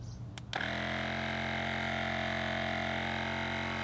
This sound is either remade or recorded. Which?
recorded